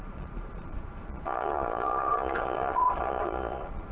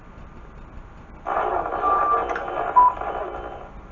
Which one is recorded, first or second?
second